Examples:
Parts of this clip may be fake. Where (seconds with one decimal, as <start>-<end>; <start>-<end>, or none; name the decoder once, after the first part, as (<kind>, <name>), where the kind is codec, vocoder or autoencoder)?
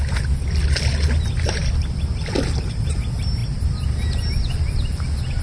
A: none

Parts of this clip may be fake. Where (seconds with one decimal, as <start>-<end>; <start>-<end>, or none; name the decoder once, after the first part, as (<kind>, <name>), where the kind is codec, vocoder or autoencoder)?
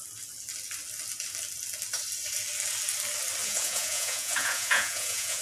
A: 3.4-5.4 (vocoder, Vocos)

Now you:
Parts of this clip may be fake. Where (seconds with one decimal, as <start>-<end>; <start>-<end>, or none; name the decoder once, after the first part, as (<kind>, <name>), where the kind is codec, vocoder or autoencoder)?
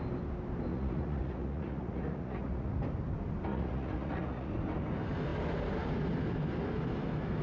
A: 0.7-2.8 (vocoder, Vocos); 3.5-4.5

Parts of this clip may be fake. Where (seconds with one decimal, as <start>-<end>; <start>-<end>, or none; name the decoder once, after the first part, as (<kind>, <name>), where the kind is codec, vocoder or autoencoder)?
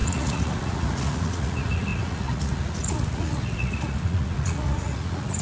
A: 0.0-5.4 (vocoder, Vocos)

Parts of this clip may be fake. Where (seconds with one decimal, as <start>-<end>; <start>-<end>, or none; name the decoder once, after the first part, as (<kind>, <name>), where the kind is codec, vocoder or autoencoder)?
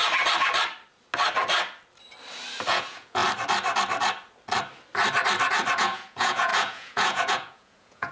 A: 2.7-3.2 (vocoder, Vocos); 5.8-8.1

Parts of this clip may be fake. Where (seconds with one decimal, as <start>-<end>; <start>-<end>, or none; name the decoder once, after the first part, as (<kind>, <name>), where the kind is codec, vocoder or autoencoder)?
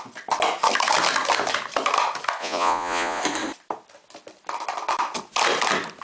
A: 2.4-3.2 (vocoder, Vocos)